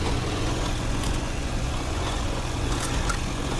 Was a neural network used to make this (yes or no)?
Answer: yes